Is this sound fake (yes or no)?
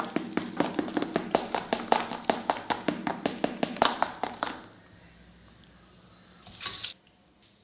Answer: no